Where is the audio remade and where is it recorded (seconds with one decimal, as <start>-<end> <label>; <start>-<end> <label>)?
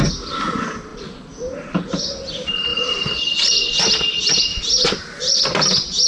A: 0.0-0.9 recorded; 0.9-2.0 remade; 2.0-2.7 recorded; 2.7-3.7 remade; 3.7-4.5 recorded; 4.5-5.6 remade; 5.6-6.1 recorded